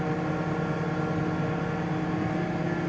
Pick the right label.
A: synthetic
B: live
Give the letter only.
B